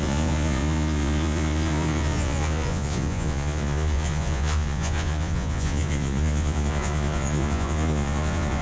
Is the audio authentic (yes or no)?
no